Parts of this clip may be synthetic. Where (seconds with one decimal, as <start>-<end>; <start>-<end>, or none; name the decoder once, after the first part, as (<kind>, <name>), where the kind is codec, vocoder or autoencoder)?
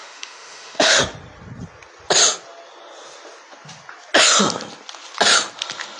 0.0-1.0 (autoencoder, DAC-VAE)